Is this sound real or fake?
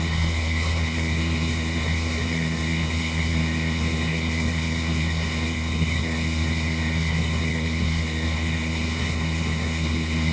fake